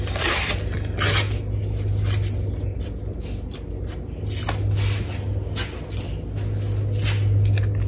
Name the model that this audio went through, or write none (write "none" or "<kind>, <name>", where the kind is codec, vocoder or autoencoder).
none